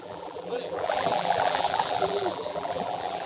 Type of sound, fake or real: fake